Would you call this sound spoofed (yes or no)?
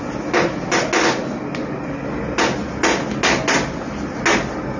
no